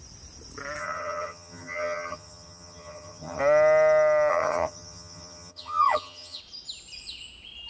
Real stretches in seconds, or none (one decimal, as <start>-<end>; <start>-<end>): 0.0-0.8; 3.4-4.3; 6.4-7.7